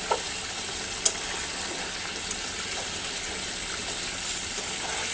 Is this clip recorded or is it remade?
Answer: recorded